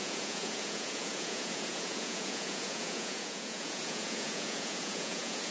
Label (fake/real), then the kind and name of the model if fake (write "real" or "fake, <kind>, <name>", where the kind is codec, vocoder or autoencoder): fake, vocoder, Vocos